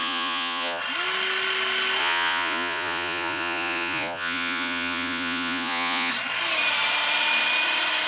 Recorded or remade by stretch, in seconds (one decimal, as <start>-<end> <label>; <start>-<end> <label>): 0.0-0.8 remade; 0.8-2.0 recorded; 2.0-6.1 remade; 6.1-8.1 recorded